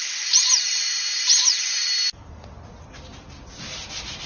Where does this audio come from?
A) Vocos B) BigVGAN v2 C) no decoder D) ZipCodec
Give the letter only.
C